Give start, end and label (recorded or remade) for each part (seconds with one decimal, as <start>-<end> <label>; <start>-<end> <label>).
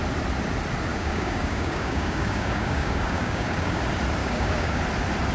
0.0-0.9 recorded; 0.9-3.8 remade; 3.8-4.2 recorded; 4.2-4.8 remade; 4.8-5.3 recorded